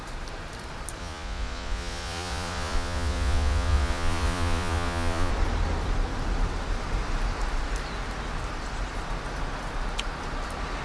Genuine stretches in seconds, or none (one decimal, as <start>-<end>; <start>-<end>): 0.0-1.0; 5.3-10.8

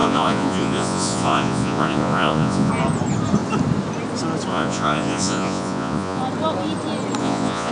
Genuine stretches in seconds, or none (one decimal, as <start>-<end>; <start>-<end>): 2.7-4.5; 6.2-7.2

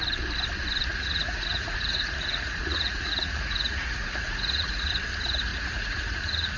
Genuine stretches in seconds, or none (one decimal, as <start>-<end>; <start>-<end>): 0.0-0.9; 4.9-5.5

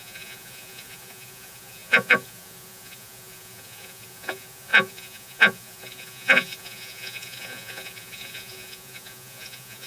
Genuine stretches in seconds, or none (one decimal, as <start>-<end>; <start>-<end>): none

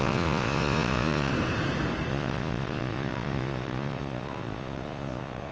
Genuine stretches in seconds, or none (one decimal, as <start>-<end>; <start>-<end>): 1.3-2.1

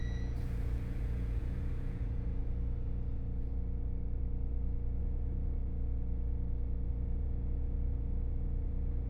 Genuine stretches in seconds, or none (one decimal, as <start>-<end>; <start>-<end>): 2.4-5.0; 5.6-6.9

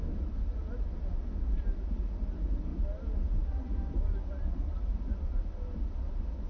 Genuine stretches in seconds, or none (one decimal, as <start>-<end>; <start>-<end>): 0.0-6.5